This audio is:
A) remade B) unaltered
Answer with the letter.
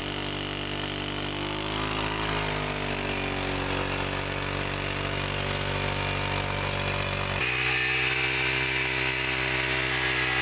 B